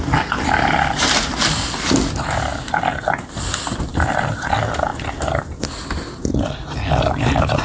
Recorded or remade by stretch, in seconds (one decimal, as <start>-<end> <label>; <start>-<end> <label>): 0.0-3.9 recorded; 3.9-4.5 remade; 4.5-7.6 recorded